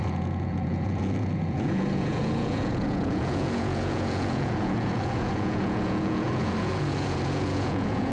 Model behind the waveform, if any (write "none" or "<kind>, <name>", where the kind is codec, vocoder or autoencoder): vocoder, Vocos